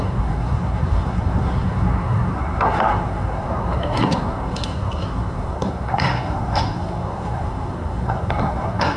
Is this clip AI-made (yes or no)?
yes